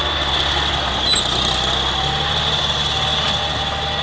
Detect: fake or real real